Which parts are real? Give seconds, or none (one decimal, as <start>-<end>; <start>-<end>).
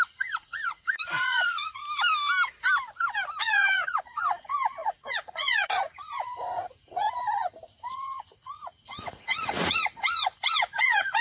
1.8-3.4